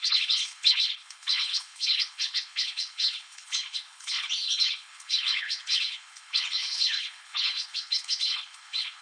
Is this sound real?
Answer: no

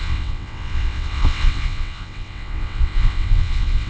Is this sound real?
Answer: no